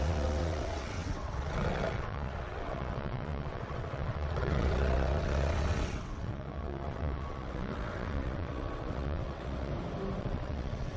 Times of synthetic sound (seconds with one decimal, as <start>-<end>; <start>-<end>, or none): 0.0-9.7; 10.2-11.0